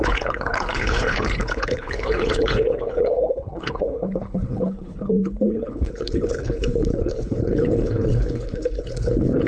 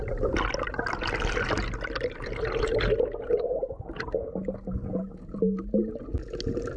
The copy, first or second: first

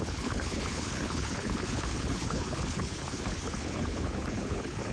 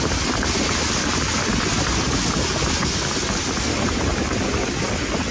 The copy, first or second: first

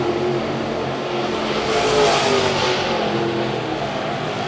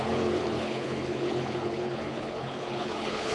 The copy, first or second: second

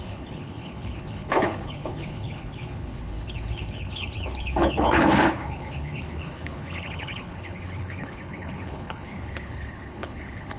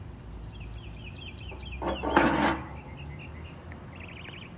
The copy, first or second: first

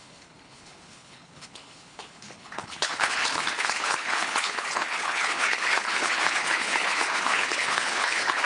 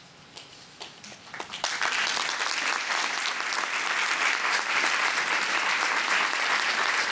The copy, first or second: first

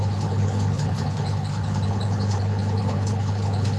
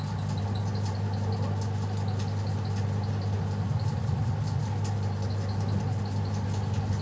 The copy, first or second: first